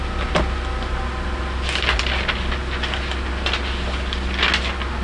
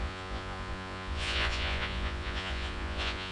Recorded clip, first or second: first